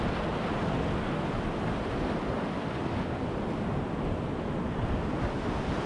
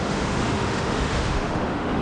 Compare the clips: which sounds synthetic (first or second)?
second